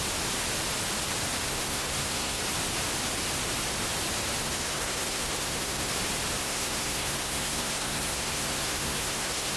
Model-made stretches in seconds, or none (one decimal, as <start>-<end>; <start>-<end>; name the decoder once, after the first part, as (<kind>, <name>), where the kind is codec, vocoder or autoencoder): 1.5-2.4 (codec, SNAC); 4.4-5.9; 6.4-9.6